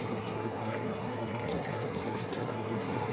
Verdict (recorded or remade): remade